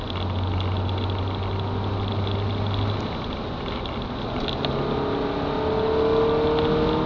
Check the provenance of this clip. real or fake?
real